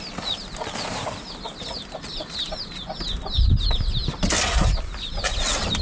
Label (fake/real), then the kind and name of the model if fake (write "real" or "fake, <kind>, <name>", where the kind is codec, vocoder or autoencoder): real